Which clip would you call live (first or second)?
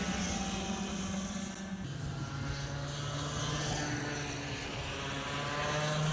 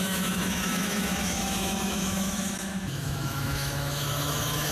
first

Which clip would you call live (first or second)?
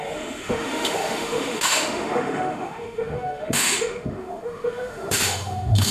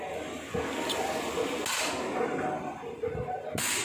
second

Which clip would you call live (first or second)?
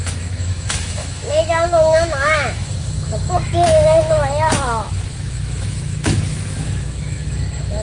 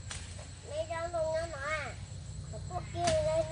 second